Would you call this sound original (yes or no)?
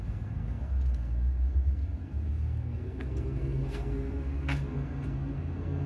no